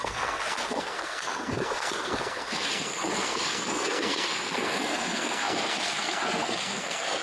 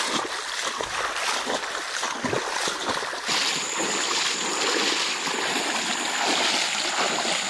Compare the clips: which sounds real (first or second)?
second